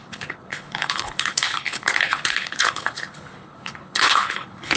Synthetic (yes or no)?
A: yes